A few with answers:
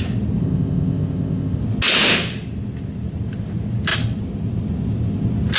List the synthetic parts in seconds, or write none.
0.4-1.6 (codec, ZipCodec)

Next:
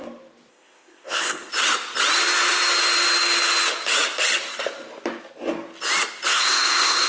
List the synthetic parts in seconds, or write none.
0.5-1.5 (codec, ZipCodec); 6.3-7.1